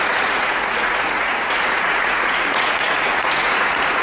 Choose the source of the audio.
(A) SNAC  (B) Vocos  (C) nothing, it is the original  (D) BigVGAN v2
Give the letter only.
B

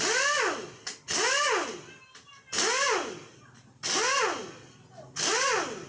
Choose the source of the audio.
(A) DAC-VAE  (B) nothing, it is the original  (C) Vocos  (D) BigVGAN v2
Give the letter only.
B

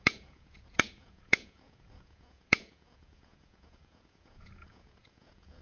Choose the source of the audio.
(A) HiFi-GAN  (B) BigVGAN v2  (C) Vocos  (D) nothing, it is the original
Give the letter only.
C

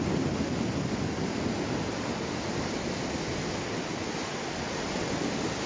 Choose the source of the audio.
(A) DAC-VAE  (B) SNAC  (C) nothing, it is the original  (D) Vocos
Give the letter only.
C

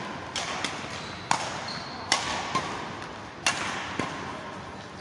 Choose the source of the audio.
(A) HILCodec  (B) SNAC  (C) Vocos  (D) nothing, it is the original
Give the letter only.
D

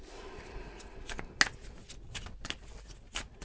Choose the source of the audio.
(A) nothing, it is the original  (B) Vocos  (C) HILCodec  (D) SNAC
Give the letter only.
A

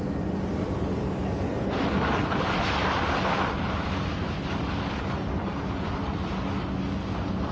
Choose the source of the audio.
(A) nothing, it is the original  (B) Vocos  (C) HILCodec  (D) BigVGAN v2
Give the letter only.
A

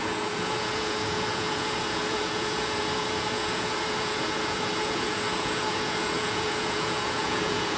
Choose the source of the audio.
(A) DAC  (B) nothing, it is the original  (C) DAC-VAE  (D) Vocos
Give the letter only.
D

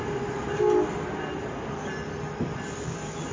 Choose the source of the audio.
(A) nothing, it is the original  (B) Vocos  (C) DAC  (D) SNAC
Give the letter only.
A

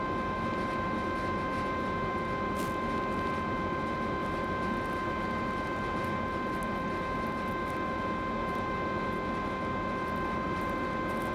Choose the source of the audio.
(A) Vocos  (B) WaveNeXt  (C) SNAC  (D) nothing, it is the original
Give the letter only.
D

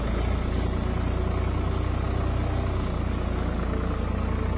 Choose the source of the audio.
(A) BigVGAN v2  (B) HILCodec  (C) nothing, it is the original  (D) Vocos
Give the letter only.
C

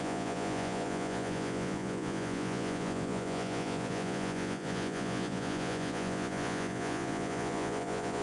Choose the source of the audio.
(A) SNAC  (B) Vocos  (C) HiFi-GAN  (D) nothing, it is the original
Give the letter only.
B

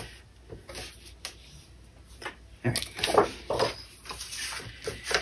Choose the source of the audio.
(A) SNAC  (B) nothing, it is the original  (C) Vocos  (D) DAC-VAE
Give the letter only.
B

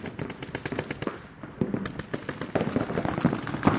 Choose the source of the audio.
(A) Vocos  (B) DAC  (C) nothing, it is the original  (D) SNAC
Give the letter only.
C